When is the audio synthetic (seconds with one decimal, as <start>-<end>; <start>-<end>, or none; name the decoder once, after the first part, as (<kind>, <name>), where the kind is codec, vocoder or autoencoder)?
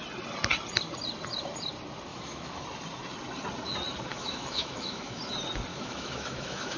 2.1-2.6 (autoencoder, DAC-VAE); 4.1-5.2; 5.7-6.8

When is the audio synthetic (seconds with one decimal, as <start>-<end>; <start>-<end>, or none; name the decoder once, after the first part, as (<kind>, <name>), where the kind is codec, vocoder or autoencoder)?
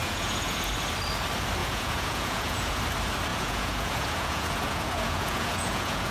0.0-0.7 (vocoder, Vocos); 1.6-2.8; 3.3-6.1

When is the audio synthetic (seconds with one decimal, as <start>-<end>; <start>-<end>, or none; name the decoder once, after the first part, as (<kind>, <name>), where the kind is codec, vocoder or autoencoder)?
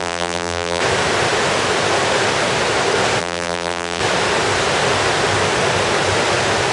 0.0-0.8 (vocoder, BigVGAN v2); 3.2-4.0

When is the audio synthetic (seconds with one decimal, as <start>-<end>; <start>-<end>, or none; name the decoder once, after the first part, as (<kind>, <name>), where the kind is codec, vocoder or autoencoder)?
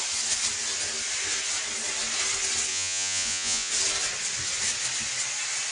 2.7-3.7 (vocoder, Vocos)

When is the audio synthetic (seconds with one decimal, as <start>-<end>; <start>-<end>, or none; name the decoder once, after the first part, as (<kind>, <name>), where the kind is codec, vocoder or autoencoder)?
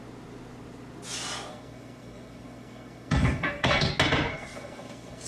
1.5-3.9 (codec, SNAC); 4.3-5.3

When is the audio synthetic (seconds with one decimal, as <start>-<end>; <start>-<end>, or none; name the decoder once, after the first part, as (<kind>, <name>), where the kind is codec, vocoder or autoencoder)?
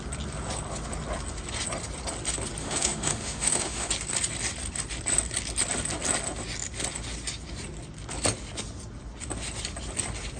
2.6-3.9 (autoencoder, DAC-VAE)